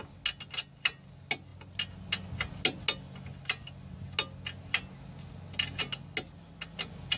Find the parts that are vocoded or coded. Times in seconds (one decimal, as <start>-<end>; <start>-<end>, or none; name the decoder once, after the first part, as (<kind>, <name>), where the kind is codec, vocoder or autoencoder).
none